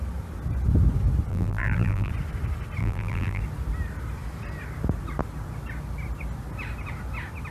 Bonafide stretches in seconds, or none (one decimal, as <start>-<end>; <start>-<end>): 0.0-1.3; 2.1-2.8; 3.4-7.5